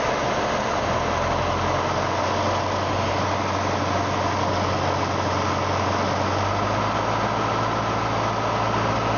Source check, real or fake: real